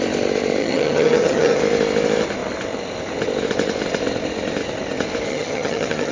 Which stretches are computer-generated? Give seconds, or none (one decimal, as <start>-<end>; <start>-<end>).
0.6-1.6; 5.3-6.1